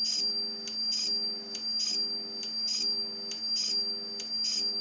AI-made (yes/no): no